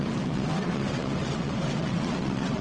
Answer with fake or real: fake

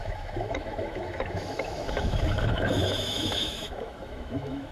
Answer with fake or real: fake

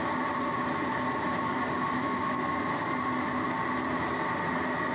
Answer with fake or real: real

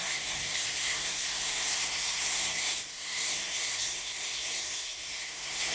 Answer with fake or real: fake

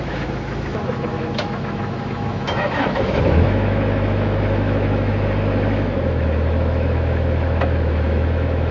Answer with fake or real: fake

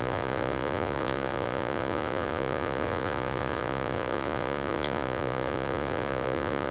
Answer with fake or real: fake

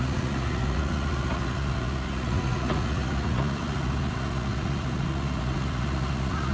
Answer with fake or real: fake